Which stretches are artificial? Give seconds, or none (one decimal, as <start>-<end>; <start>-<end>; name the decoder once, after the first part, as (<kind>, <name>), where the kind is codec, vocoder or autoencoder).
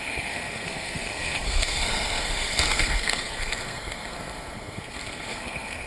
0.0-5.9 (codec, SNAC)